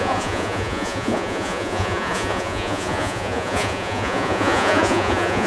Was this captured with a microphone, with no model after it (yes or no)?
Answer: no